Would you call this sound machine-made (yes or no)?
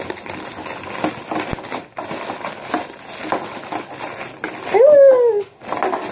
no